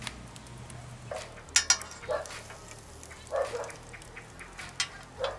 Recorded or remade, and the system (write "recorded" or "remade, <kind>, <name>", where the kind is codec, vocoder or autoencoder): recorded